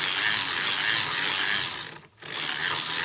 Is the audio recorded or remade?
recorded